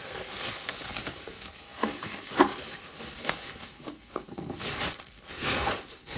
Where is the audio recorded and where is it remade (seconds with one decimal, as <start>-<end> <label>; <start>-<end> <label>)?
0.0-6.2 remade